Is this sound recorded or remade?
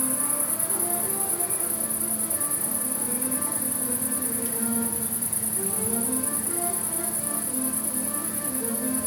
recorded